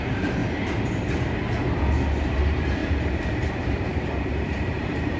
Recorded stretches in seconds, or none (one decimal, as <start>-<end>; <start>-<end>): 0.4-2.4; 2.8-3.4